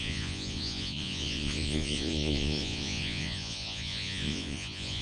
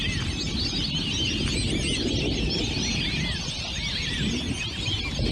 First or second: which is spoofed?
first